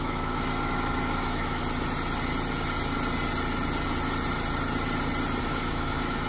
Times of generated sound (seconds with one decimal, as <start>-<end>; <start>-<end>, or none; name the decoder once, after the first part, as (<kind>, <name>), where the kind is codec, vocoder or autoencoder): 0.0-1.6 (autoencoder, DAC-VAE); 5.4-6.3